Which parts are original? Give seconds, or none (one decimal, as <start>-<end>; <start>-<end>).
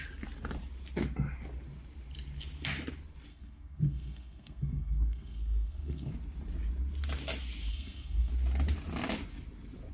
0.0-3.3; 6.1-7.7; 8.3-9.9